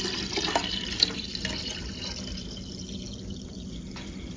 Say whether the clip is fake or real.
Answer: real